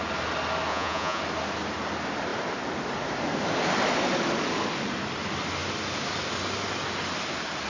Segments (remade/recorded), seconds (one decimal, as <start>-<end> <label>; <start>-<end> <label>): 0.0-0.7 recorded; 0.7-1.2 remade; 1.2-7.7 recorded